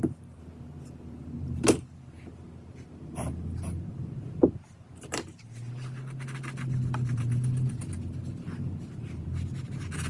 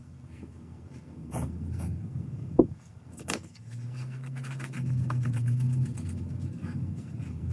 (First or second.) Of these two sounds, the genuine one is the first